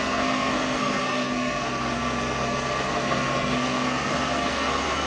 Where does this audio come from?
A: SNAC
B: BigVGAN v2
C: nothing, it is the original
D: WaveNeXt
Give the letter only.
A